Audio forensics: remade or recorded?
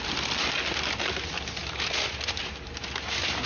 recorded